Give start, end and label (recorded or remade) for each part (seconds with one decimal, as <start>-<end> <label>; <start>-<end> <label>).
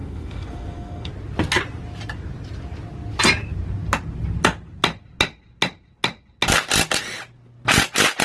0.0-1.1 remade; 1.1-8.2 recorded